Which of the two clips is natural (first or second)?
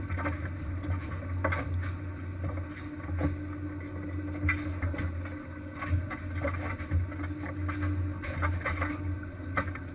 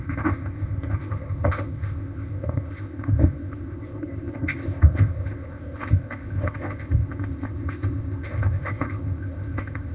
first